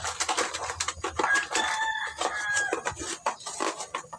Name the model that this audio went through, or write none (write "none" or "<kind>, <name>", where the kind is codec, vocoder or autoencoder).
none